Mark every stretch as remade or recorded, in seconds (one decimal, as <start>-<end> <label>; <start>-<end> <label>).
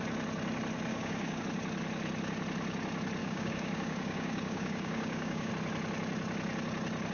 0.0-0.9 recorded; 0.9-1.4 remade; 1.4-3.2 recorded; 3.2-5.5 remade; 5.5-7.1 recorded